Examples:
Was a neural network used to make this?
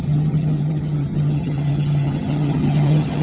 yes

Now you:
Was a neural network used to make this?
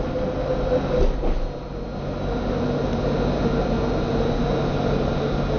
no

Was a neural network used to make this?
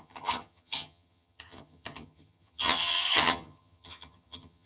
yes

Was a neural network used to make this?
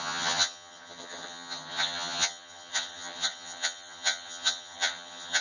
yes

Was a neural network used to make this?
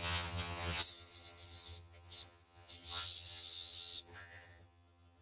yes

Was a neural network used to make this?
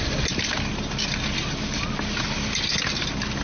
no